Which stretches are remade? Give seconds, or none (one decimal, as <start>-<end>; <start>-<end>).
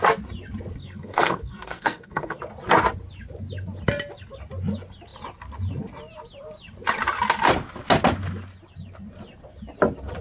0.8-2.4